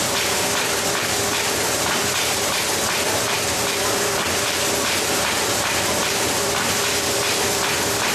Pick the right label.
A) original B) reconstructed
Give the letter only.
B